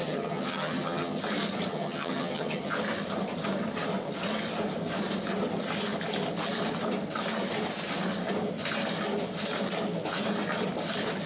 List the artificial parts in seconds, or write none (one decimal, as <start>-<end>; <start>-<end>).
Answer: 0.0-1.2; 1.7-2.7